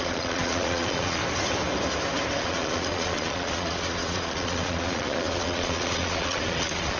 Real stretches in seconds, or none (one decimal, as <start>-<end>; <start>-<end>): 1.2-2.4